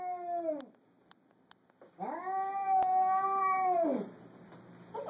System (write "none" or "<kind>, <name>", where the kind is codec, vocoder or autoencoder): none